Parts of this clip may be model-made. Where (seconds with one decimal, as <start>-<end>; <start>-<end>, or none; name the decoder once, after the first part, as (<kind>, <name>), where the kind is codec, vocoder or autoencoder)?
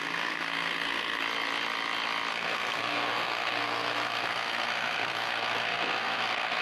0.0-1.2 (codec, SNAC); 2.3-6.6